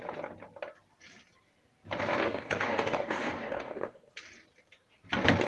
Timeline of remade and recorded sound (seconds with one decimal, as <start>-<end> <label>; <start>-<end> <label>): 0.0-2.2 recorded; 2.2-4.1 remade; 4.1-5.5 recorded